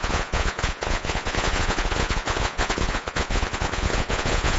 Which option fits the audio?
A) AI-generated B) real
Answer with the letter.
A